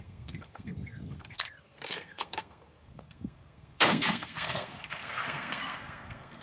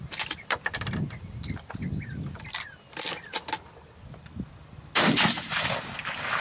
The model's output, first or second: first